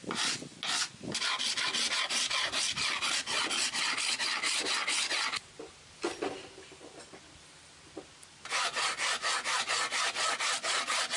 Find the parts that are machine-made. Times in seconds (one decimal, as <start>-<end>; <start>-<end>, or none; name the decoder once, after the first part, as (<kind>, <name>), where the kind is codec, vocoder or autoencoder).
none